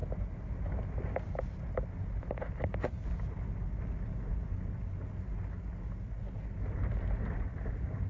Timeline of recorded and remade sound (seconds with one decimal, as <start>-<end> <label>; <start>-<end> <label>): 0.0-8.1 recorded